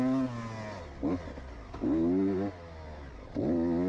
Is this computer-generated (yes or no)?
no